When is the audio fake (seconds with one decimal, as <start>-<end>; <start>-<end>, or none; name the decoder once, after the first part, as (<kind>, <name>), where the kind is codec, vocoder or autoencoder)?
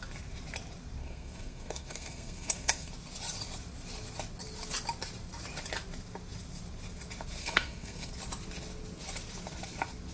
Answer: 1.0-2.9 (codec, SNAC); 7.4-8.1